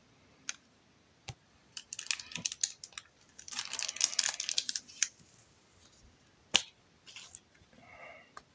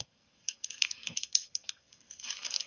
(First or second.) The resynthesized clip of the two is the second